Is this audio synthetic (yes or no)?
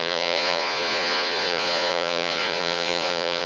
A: yes